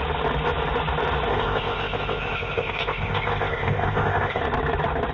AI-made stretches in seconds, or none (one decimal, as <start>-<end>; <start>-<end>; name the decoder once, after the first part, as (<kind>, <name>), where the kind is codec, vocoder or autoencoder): 1.3-4.4 (codec, ZipCodec)